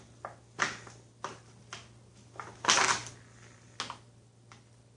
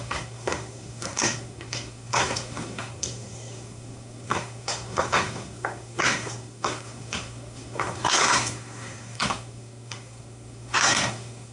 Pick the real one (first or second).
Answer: first